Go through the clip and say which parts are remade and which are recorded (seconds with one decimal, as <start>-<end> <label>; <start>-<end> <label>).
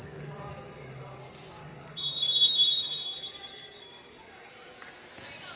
0.0-1.2 remade; 1.2-1.6 recorded; 1.6-4.5 remade; 4.5-5.6 recorded